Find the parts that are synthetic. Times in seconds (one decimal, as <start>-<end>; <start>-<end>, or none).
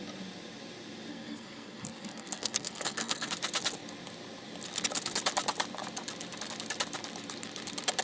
1.1-3.3